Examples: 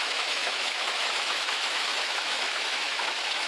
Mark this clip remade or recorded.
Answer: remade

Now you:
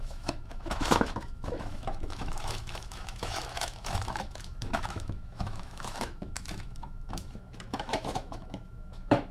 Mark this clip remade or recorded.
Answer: remade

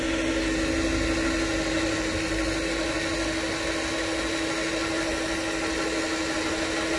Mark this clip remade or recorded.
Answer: recorded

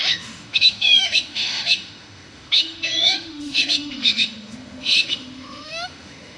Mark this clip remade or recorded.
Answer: remade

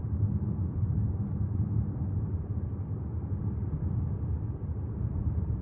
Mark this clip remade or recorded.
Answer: recorded